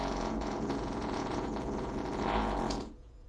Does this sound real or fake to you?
fake